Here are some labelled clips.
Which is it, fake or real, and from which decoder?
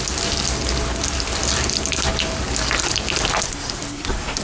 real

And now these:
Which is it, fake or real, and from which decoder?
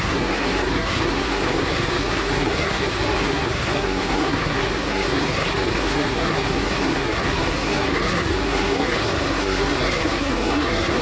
fake, codec, SNAC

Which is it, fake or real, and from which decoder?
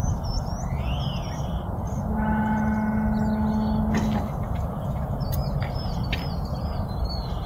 real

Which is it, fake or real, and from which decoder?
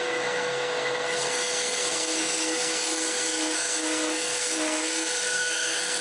fake, codec, SNAC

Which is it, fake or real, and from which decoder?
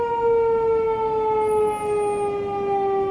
real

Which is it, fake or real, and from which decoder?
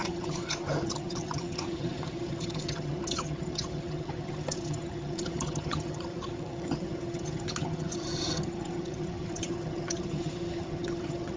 fake, vocoder, HiFi-GAN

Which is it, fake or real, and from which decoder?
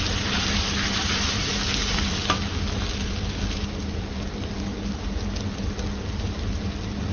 real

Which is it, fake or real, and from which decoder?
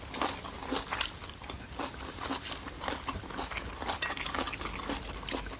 real